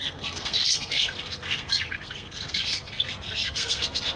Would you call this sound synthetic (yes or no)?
yes